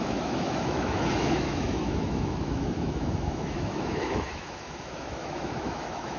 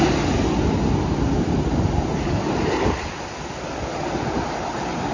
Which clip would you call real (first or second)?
second